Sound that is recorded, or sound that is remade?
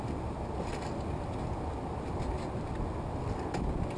recorded